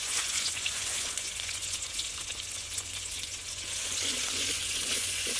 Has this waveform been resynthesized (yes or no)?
yes